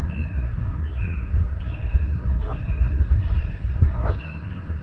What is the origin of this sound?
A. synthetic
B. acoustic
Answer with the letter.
A